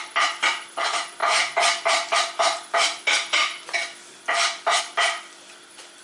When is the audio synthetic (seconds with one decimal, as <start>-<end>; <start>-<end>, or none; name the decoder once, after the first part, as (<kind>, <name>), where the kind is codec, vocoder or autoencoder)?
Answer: 0.0-6.0 (vocoder, BigVGAN v2)